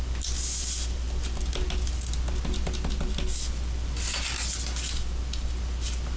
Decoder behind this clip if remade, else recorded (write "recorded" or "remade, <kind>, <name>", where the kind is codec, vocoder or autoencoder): recorded